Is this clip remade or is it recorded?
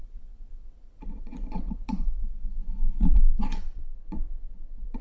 remade